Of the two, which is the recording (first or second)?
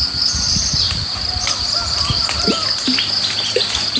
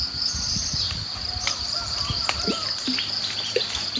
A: first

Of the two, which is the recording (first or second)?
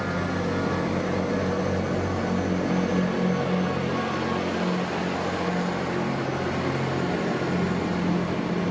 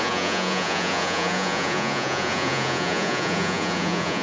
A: first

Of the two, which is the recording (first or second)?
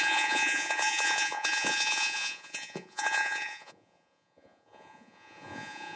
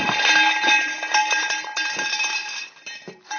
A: second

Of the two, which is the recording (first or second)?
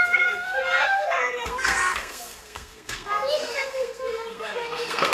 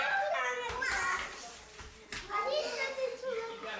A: second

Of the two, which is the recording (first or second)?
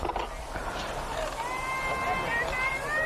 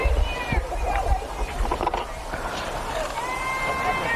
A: first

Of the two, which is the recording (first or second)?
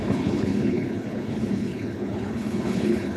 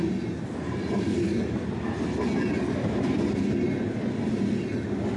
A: second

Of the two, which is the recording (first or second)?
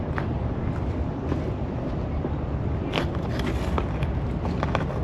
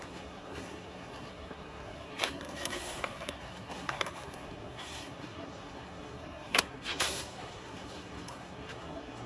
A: first